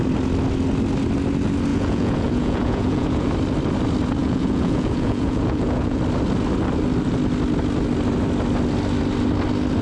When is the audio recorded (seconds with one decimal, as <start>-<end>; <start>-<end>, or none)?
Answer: 0.0-1.7; 3.3-4.2; 6.0-9.8